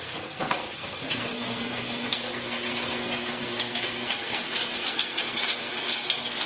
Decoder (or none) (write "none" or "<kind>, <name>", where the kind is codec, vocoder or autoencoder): codec, SNAC